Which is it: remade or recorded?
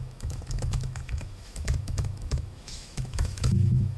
remade